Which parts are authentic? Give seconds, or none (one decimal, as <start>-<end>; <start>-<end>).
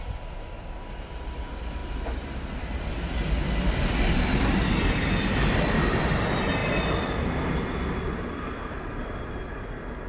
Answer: 0.0-10.1